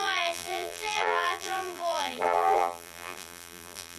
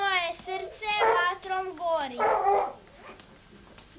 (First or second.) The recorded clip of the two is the second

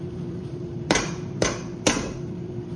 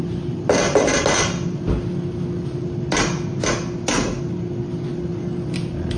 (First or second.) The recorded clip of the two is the second